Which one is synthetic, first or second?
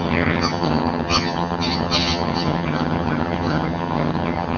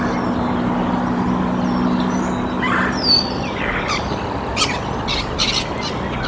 first